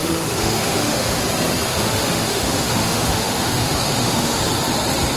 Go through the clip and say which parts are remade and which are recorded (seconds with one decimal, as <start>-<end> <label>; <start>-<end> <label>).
0.0-1.2 remade; 1.2-1.7 recorded; 1.7-4.4 remade; 4.4-5.2 recorded